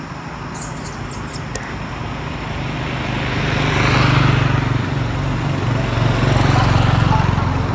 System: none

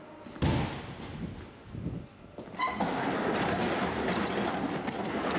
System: none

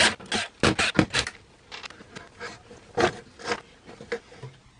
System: none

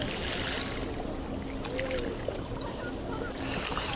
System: none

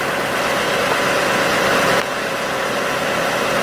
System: none